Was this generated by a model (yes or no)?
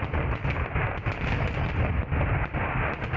no